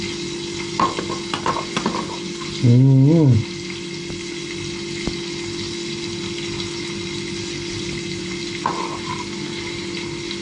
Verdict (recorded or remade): recorded